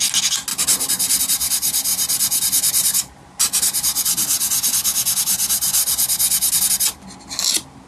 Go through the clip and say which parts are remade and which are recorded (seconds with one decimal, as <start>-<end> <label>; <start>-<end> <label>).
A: 0.0-7.9 recorded